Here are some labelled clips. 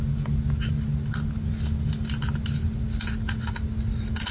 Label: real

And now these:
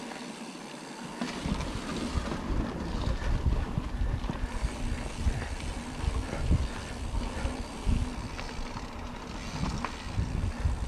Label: real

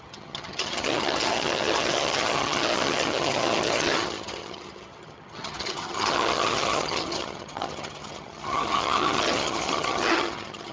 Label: fake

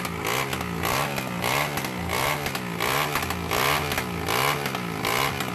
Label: real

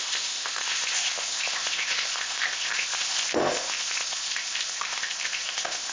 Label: fake